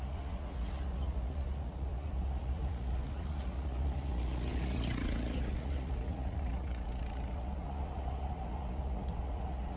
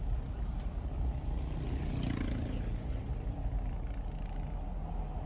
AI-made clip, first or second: first